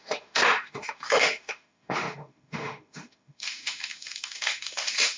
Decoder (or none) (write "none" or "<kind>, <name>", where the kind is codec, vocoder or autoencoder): autoencoder, DAC-VAE